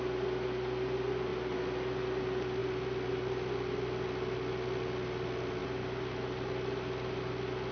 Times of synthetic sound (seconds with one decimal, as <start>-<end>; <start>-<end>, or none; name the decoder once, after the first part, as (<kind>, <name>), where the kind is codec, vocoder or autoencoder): none